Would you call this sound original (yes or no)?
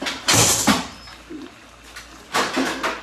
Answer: yes